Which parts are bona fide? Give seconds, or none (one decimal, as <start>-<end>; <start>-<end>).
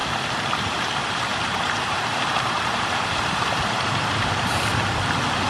0.0-0.6; 4.7-5.5